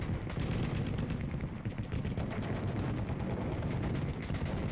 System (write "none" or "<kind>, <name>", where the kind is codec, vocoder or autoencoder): none